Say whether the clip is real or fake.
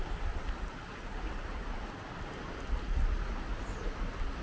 real